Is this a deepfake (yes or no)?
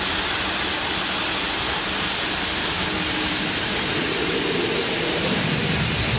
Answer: no